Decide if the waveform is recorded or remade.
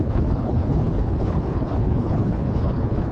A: remade